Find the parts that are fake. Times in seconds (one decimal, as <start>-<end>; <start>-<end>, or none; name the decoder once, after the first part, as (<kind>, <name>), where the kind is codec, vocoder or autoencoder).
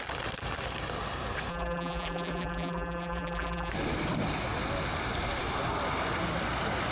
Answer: 1.5-3.7 (vocoder, BigVGAN v2)